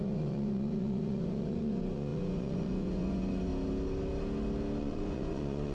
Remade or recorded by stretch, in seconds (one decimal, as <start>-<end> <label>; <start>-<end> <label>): 0.0-3.5 remade; 3.5-4.8 recorded; 4.8-5.7 remade